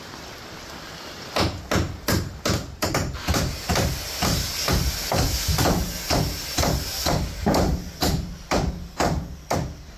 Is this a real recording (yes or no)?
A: yes